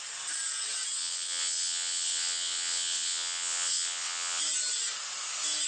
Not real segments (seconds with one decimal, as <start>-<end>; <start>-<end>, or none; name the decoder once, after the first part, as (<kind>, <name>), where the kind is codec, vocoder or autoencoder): 1.0-4.4 (vocoder, WaveNeXt)

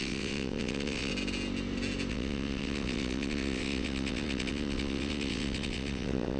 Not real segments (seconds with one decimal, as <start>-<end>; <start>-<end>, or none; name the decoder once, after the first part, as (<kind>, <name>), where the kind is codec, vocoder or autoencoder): 0.0-1.1 (vocoder, WaveNeXt); 2.1-6.4

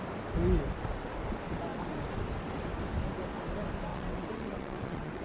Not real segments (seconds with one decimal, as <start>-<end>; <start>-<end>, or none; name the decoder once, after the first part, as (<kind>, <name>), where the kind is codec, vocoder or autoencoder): 3.9-5.2 (vocoder, WaveNeXt)